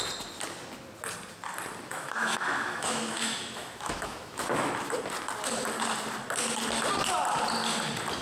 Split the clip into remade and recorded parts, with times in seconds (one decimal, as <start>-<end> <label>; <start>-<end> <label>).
0.0-1.9 recorded; 1.9-4.7 remade; 4.7-8.2 recorded